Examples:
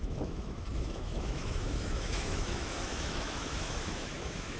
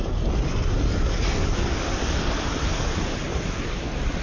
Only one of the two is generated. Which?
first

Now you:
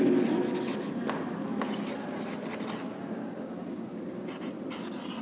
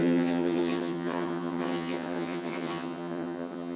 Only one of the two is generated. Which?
second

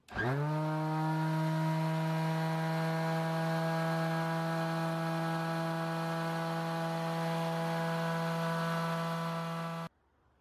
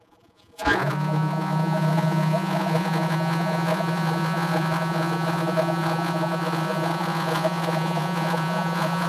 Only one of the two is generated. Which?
second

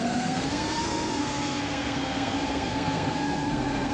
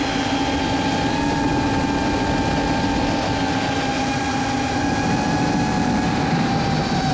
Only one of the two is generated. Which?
first